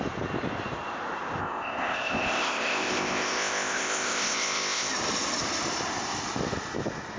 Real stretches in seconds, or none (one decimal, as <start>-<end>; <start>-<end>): 0.0-1.4; 4.9-7.2